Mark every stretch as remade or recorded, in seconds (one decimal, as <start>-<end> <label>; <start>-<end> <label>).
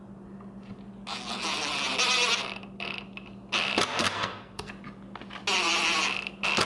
0.0-4.0 recorded; 4.0-4.7 remade; 4.7-6.7 recorded